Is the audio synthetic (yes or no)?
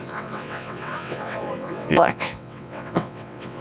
yes